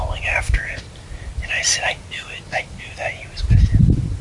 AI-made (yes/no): no